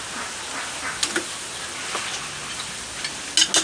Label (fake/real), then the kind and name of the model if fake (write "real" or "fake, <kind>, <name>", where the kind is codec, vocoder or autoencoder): real